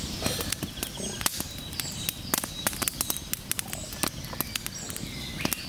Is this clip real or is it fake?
real